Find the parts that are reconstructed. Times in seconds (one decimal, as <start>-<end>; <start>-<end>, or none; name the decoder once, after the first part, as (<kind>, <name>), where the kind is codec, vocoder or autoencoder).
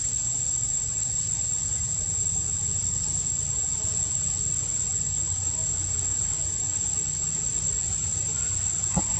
none